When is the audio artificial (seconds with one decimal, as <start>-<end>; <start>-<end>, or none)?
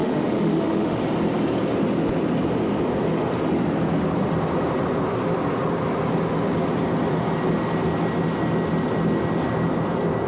0.0-1.0